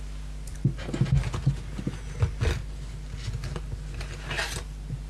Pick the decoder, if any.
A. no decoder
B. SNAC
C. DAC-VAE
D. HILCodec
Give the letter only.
A